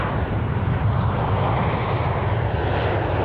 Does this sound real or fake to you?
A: real